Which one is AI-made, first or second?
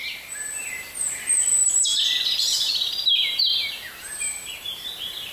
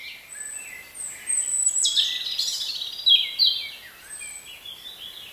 first